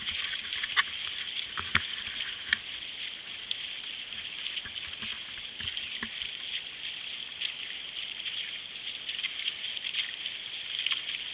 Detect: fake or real real